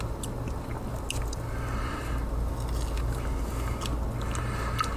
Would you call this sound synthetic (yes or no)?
no